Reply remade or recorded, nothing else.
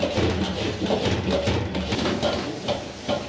recorded